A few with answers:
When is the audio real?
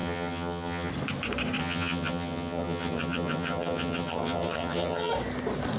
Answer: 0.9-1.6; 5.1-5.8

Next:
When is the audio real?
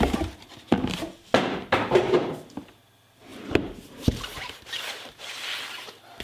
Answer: 0.0-3.3; 4.7-6.2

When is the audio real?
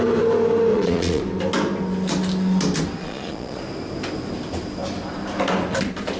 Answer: 0.0-0.7; 1.2-3.0; 3.6-6.2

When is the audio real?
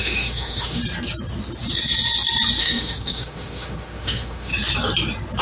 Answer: 0.8-2.6; 4.5-5.4